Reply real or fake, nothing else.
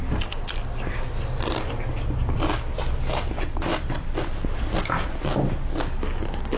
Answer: real